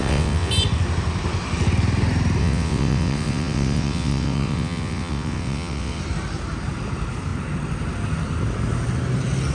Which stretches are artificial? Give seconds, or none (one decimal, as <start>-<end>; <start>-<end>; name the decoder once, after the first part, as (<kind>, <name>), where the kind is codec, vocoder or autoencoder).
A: 0.0-0.5 (vocoder, WaveNeXt); 2.4-6.0